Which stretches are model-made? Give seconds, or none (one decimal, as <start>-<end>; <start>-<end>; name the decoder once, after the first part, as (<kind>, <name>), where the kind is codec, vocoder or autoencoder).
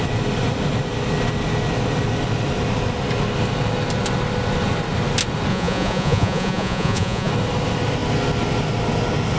5.5-7.3 (vocoder, Vocos)